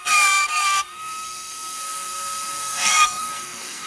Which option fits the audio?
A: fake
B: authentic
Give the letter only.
A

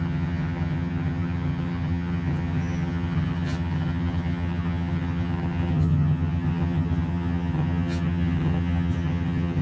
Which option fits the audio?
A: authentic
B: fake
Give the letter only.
B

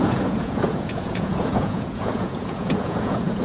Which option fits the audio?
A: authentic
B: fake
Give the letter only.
B